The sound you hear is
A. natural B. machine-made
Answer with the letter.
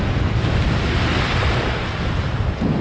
A